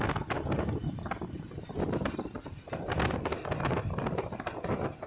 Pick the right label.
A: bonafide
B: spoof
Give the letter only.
A